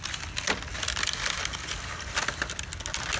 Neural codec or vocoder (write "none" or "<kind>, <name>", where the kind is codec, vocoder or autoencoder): none